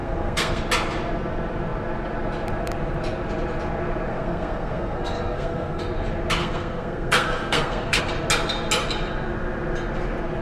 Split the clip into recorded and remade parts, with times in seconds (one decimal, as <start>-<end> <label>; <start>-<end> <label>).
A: 0.0-0.6 remade; 0.6-4.1 recorded; 4.1-5.8 remade; 5.8-6.4 recorded; 6.4-8.0 remade; 8.0-10.4 recorded